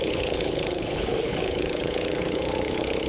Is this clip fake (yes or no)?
yes